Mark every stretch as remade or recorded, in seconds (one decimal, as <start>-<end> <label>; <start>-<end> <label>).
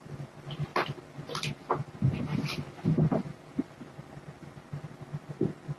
0.0-5.8 recorded